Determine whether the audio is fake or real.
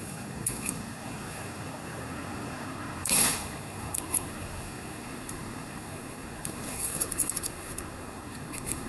fake